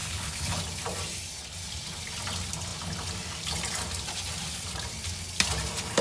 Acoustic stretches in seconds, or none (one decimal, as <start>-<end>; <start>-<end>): 0.6-6.0